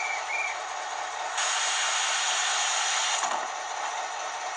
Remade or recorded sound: recorded